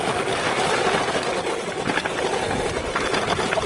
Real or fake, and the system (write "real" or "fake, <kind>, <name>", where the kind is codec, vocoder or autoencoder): real